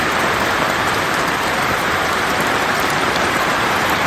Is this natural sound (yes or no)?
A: no